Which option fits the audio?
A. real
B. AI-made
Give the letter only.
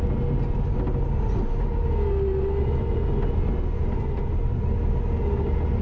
A